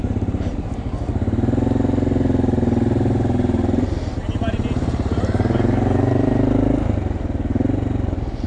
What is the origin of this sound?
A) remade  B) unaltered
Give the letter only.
B